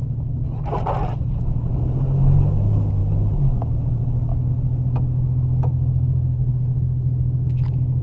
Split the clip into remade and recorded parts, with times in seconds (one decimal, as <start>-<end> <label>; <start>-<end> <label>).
0.0-6.3 recorded; 6.3-7.6 remade; 7.6-8.0 recorded